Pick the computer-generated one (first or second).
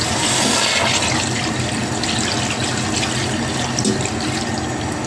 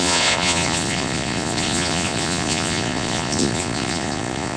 second